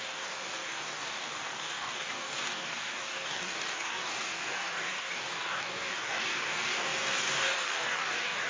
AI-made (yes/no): yes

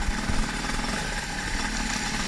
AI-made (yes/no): no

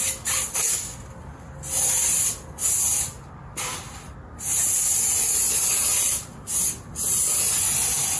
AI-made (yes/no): no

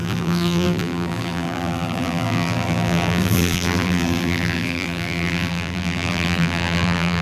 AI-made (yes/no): yes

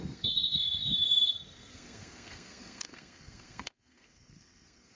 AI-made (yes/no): yes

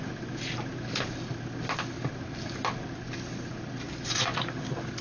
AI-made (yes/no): no